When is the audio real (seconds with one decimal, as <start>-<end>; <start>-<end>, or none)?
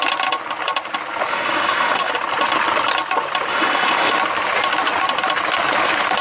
0.0-1.3; 2.1-3.5; 4.2-6.2